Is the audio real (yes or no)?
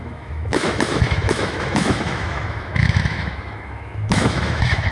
no